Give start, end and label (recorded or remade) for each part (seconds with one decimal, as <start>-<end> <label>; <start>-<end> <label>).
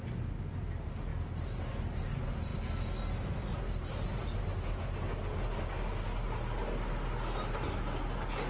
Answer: 0.0-8.5 recorded